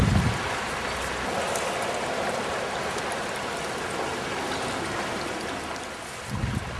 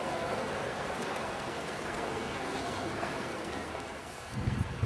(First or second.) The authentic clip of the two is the first